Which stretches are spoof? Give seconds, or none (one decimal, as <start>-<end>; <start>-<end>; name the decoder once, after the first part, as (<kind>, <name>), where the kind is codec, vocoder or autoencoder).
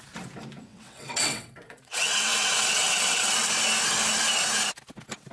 0.7-3.5 (vocoder, WaveNeXt)